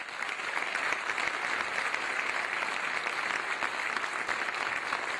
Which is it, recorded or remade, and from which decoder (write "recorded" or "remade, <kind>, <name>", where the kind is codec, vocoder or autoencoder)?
recorded